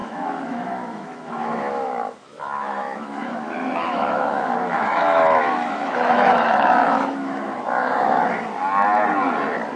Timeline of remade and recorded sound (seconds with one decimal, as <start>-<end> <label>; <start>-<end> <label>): 0.0-8.2 remade; 8.2-9.8 recorded

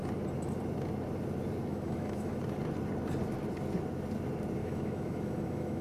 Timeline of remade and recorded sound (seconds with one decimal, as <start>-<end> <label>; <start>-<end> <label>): 0.0-1.7 recorded; 1.7-2.4 remade; 2.4-4.6 recorded; 4.6-5.8 remade